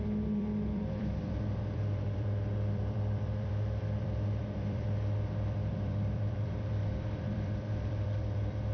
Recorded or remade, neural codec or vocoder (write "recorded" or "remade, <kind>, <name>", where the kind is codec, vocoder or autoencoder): remade, vocoder, BigVGAN v2